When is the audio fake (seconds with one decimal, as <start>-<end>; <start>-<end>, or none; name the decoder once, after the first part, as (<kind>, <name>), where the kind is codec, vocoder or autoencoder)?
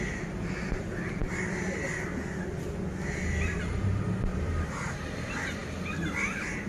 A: 4.3-5.0 (vocoder, BigVGAN v2)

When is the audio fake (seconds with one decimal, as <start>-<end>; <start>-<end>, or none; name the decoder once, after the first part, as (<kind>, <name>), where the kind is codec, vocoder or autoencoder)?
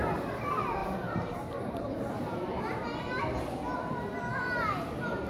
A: 0.8-3.2 (vocoder, BigVGAN v2)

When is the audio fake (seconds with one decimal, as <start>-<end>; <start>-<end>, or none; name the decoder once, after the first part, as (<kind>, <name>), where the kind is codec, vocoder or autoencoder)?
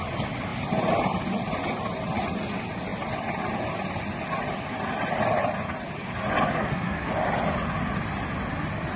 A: 6.5-7.1 (codec, SNAC)